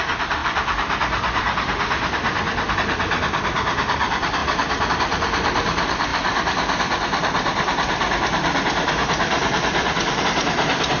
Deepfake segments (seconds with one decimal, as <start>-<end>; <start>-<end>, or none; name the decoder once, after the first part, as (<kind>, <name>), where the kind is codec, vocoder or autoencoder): 0.0-4.4 (vocoder, BigVGAN v2); 4.9-11.0